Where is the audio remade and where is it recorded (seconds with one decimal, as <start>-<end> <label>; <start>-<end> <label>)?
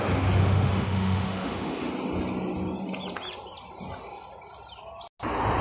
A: 0.0-0.4 recorded; 0.4-1.9 remade; 1.9-5.6 recorded